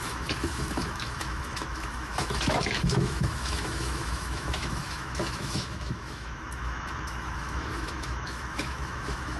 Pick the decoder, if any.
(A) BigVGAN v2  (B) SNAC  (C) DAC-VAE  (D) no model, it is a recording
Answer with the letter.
C